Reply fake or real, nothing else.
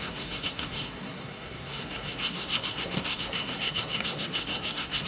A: fake